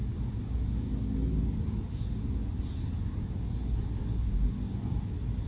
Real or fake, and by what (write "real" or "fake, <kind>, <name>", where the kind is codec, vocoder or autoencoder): real